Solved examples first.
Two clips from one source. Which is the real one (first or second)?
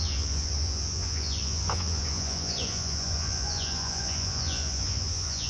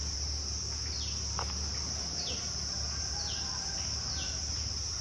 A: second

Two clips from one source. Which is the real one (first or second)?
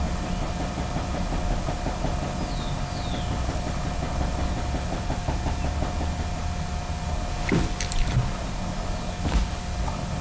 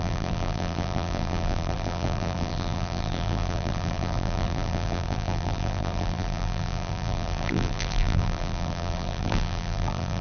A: first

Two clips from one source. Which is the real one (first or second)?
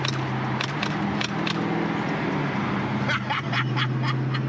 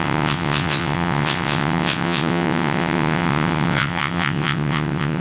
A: first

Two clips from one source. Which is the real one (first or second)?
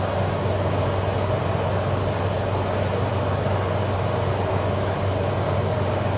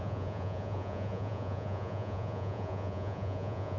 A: first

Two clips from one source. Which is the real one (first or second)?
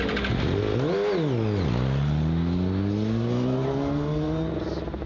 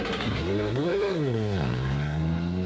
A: first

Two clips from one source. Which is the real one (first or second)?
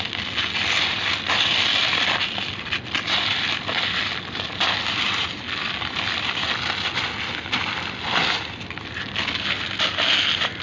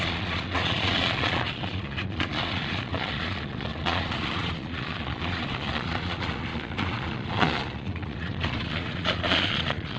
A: first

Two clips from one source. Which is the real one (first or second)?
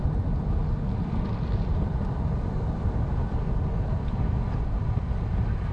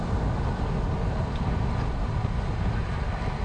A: second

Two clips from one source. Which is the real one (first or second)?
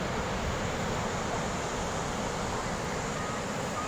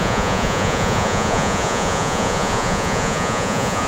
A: first